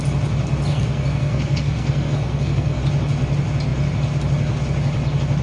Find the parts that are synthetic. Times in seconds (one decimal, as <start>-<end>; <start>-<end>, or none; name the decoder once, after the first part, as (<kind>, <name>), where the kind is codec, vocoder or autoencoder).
0.7-2.8 (codec, SNAC)